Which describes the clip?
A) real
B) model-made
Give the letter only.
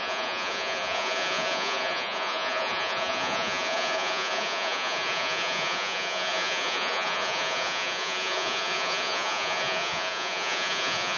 B